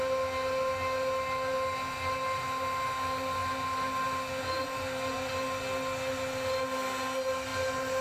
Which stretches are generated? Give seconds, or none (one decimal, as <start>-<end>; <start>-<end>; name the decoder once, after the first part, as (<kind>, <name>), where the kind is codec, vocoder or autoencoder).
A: none